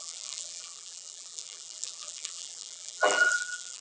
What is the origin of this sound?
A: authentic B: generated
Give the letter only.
B